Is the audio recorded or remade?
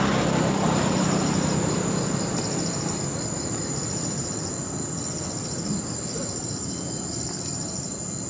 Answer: recorded